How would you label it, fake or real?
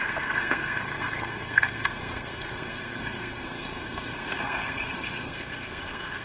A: fake